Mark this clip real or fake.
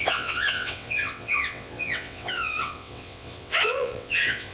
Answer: fake